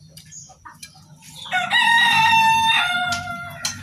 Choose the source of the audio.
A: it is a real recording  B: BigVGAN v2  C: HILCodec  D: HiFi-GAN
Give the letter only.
A